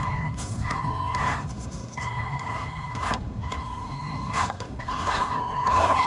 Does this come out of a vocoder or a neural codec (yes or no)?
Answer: yes